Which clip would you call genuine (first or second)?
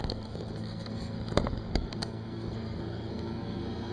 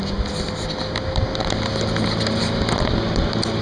second